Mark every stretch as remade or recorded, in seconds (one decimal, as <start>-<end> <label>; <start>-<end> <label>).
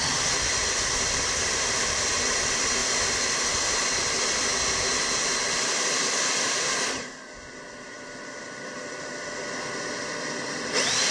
0.0-2.8 remade; 2.8-3.8 recorded; 3.8-4.5 remade; 4.5-5.4 recorded; 5.4-11.1 remade